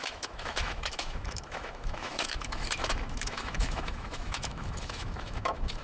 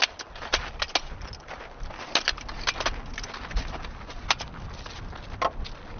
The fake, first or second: first